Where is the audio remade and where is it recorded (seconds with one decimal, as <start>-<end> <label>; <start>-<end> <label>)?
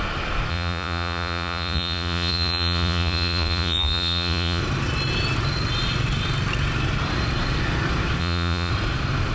0.0-0.5 recorded; 0.5-4.6 remade; 4.6-8.2 recorded; 8.2-8.7 remade; 8.7-9.3 recorded